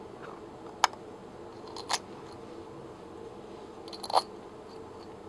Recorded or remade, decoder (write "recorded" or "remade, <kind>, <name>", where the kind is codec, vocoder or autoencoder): recorded